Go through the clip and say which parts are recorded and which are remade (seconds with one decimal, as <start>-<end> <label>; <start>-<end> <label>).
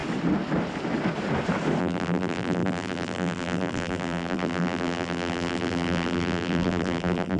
0.0-1.8 recorded; 1.8-7.4 remade